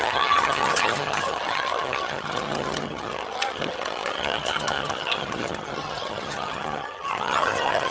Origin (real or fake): fake